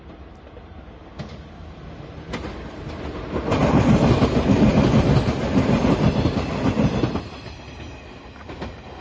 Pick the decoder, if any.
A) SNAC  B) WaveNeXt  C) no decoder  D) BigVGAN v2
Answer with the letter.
C